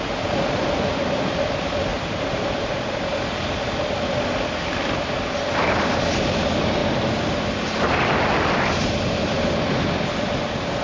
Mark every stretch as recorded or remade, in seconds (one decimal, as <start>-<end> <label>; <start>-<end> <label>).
0.0-1.9 recorded; 1.9-2.7 remade; 2.7-10.8 recorded